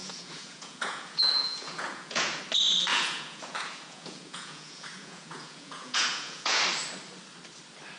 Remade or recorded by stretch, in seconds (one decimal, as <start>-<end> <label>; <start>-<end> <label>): 0.0-2.4 remade; 2.4-2.9 recorded; 2.9-6.6 remade; 6.6-8.0 recorded